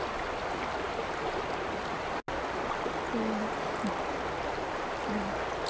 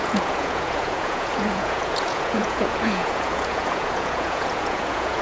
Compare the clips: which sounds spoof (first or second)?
second